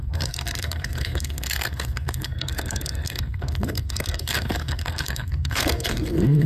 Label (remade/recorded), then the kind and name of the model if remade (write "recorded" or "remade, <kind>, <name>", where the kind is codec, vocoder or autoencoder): remade, codec, SNAC